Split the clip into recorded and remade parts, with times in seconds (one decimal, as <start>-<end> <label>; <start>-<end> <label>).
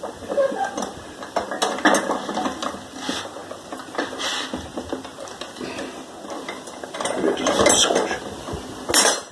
0.0-9.3 recorded